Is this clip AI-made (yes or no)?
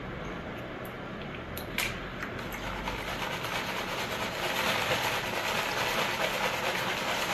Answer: no